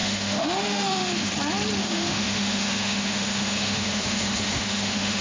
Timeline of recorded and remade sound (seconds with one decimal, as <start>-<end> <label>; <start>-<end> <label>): 0.0-1.3 remade; 1.3-1.8 recorded; 1.8-5.2 remade